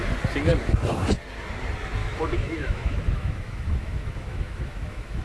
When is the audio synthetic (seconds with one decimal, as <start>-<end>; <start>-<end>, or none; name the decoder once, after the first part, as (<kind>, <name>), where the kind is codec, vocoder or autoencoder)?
2.0-5.2 (autoencoder, DAC-VAE)